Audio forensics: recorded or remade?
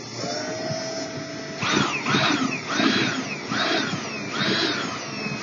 recorded